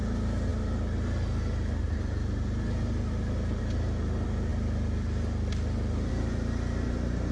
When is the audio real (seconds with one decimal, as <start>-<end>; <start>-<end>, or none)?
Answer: 0.0-7.3